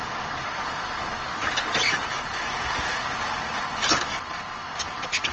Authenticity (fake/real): real